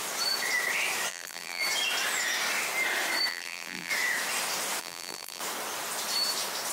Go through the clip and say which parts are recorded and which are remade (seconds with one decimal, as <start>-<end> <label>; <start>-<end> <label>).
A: 0.0-1.1 recorded; 1.1-1.6 remade; 1.6-3.3 recorded; 3.3-3.9 remade; 3.9-4.8 recorded; 4.8-5.4 remade; 5.4-6.7 recorded